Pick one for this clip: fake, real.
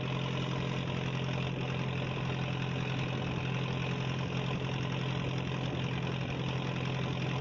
real